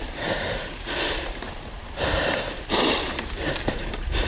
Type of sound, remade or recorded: remade